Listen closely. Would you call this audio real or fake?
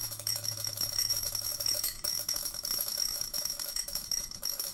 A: fake